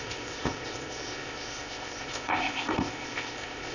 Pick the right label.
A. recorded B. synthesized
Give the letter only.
B